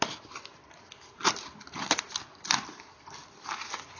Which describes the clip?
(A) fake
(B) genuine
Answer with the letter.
B